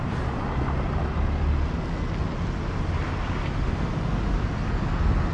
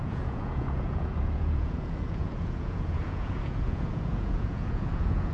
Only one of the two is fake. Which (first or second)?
second